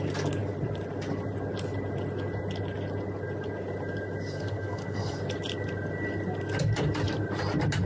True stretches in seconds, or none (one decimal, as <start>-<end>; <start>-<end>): 0.0-4.3; 5.2-7.9